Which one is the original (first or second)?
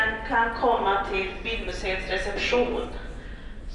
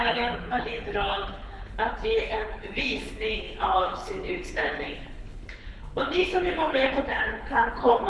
first